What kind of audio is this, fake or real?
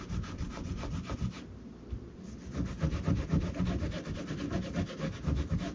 real